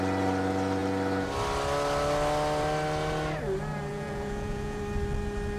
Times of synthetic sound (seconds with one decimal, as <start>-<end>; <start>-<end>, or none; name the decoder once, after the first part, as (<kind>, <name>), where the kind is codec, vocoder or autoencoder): 3.9-4.8 (vocoder, Vocos)